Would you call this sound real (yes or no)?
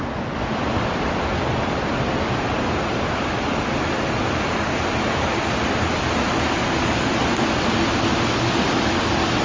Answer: yes